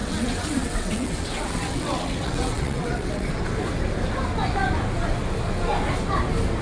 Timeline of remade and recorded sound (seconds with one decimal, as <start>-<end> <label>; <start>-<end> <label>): 0.0-3.3 remade; 3.3-6.6 recorded